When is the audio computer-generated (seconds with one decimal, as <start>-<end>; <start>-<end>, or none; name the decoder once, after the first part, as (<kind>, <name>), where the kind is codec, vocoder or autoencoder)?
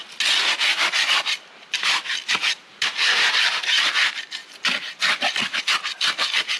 2.7-3.9 (vocoder, BigVGAN v2)